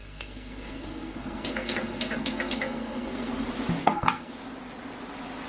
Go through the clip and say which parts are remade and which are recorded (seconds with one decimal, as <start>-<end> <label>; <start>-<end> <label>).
0.0-3.3 remade; 3.3-3.8 recorded; 3.8-4.3 remade; 4.3-5.5 recorded